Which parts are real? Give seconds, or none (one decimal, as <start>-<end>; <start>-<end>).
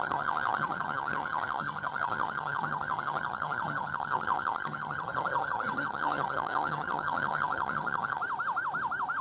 8.2-9.2